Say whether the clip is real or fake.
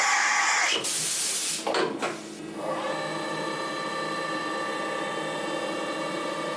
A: real